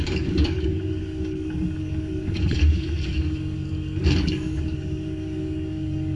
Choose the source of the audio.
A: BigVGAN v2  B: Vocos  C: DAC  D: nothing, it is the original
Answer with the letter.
C